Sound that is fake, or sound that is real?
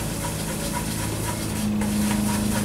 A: real